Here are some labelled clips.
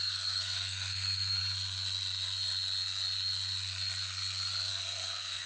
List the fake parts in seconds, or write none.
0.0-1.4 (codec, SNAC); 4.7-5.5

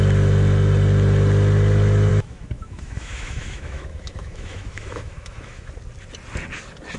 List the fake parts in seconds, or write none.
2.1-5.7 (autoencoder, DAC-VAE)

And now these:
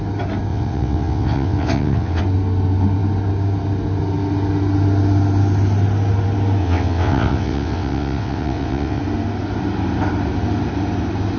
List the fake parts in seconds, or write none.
0.5-2.2 (vocoder, WaveNeXt); 6.6-9.0

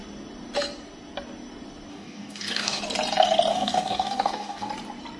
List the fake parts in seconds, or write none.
1.9-2.8 (codec, DAC); 3.5-4.7

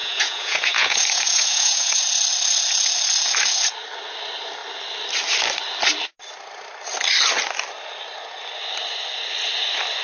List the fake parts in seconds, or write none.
0.0-2.0 (vocoder, Vocos)